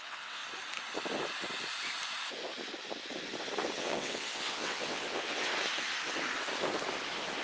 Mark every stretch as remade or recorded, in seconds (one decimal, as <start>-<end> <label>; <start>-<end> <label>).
0.0-0.4 remade; 0.4-3.8 recorded; 3.8-5.5 remade; 5.5-7.4 recorded